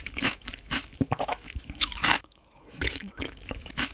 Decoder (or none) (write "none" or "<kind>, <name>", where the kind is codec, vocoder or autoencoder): autoencoder, DAC-VAE